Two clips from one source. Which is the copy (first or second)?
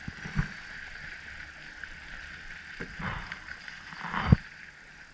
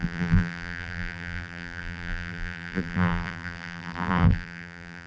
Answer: second